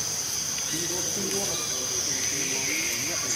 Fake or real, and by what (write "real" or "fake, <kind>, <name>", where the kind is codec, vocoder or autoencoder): real